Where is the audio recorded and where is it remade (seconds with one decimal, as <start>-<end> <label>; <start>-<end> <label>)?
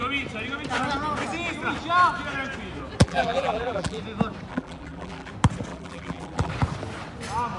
0.0-3.0 recorded; 3.0-4.0 remade; 4.0-4.5 recorded; 4.5-5.3 remade; 5.3-5.7 recorded; 5.7-6.5 remade; 6.5-7.6 recorded